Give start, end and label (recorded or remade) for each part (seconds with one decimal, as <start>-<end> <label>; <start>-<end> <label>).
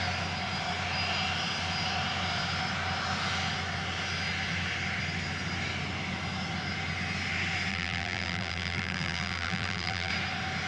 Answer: 0.0-7.7 recorded; 7.7-10.1 remade; 10.1-10.7 recorded